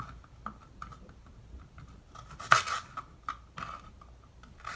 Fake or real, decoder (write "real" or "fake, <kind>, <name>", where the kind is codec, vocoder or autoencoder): real